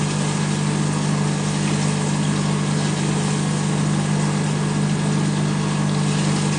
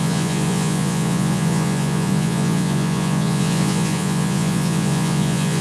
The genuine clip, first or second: first